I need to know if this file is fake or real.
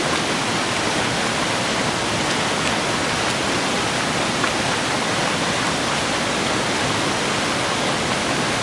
real